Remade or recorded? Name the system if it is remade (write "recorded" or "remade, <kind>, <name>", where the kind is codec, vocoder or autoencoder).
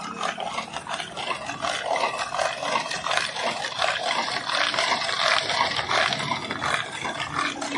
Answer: recorded